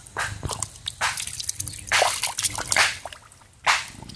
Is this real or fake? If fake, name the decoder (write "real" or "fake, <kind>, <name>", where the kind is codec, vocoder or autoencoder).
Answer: real